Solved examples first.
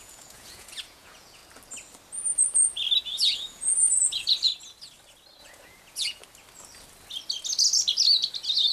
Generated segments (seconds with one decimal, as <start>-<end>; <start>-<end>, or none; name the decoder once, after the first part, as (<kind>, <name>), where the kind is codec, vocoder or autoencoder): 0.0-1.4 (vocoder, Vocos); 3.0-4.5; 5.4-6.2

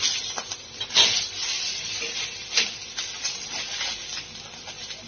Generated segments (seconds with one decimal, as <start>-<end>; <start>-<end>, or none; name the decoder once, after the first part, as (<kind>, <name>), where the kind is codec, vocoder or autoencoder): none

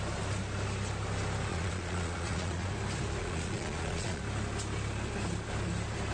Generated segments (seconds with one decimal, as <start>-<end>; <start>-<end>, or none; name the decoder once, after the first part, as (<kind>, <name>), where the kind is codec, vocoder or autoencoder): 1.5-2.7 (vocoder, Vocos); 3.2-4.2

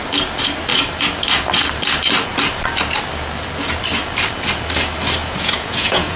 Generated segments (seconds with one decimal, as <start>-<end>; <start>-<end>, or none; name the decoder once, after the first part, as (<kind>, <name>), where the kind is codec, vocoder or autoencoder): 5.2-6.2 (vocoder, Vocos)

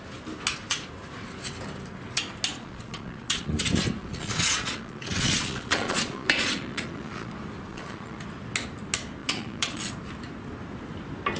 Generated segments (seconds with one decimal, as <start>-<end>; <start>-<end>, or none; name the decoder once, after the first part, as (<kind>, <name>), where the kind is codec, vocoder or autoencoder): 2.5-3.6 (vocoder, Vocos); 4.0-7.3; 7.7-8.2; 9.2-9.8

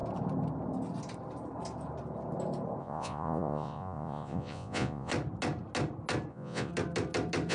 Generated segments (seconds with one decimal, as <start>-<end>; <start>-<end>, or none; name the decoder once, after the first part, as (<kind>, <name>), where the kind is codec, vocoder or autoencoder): 2.8-5.1 (vocoder, Vocos); 6.3-6.7